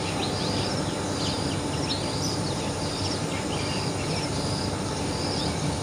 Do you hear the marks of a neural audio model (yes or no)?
no